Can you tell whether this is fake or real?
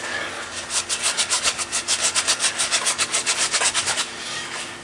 fake